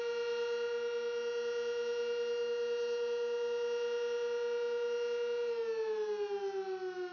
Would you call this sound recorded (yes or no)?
yes